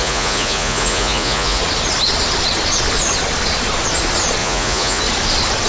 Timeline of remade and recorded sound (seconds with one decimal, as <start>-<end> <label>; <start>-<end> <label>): 0.0-1.6 remade; 1.6-4.4 recorded; 4.4-5.0 remade; 5.0-5.7 recorded